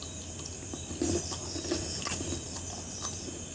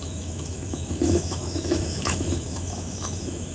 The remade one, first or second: second